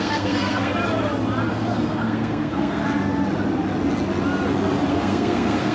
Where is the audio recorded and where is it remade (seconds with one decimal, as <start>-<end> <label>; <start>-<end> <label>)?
0.0-0.7 remade; 0.7-1.5 recorded; 1.5-2.8 remade; 2.8-4.9 recorded; 4.9-5.7 remade